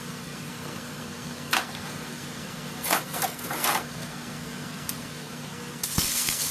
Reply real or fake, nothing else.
fake